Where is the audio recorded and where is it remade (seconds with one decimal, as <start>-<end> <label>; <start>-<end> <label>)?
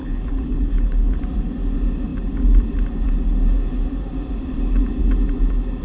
0.0-1.2 remade; 1.2-5.8 recorded